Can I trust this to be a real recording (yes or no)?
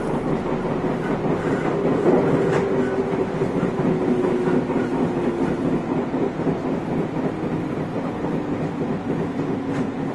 yes